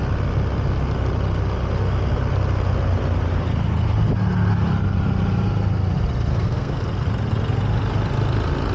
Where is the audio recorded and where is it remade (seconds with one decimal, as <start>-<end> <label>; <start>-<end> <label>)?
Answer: 0.0-6.3 recorded; 6.3-6.8 remade; 6.8-8.7 recorded